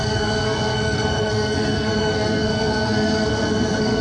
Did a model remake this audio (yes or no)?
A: yes